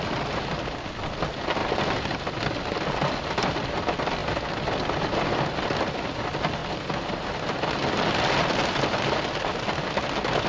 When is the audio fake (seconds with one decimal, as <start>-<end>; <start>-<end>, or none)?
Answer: none